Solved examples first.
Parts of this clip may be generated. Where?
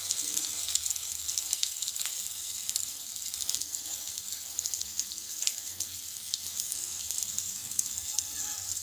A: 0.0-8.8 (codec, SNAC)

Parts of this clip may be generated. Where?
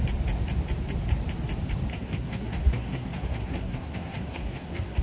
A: 1.9-5.0 (codec, SNAC)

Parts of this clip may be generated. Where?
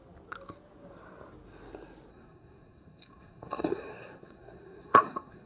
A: 2.1-5.5 (codec, SNAC)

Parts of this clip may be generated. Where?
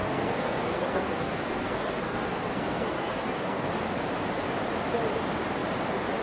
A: 0.0-3.7 (codec, SNAC)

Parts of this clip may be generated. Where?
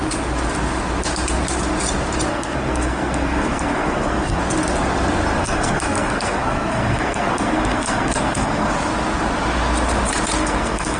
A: 2.3-4.4 (codec, SNAC); 5.4-8.7; 10.4-11.0